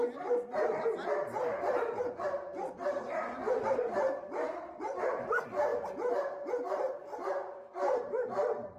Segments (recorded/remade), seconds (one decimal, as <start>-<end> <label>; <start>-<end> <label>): 0.0-8.8 remade